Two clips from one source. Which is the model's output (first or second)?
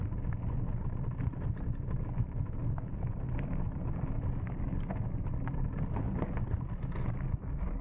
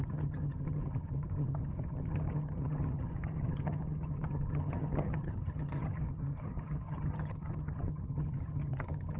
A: second